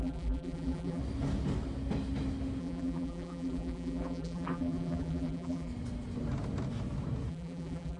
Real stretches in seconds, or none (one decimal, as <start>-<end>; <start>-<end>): 1.0-2.6; 5.7-7.3